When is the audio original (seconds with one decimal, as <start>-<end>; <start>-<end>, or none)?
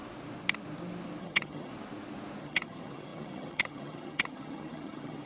0.0-1.2; 1.7-2.4